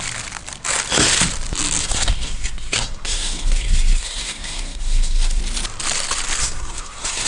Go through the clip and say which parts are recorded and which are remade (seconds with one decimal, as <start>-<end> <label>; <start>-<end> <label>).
0.0-1.8 recorded; 1.8-5.4 remade; 5.4-6.4 recorded; 6.4-7.3 remade